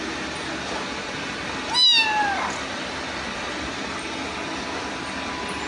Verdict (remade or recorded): recorded